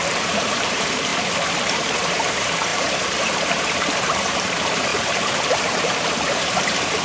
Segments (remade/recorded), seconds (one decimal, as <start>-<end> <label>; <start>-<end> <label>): 0.0-1.1 remade; 1.1-2.0 recorded; 2.0-7.0 remade